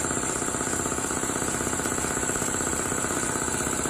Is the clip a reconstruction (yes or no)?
yes